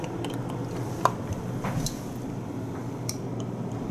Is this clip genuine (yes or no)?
no